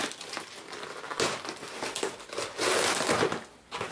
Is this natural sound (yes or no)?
yes